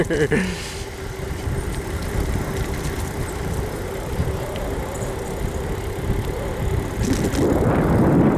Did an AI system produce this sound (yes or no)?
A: no